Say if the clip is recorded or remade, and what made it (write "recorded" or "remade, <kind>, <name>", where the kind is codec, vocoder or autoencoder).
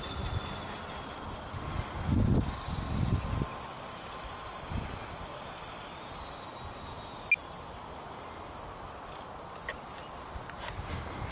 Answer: recorded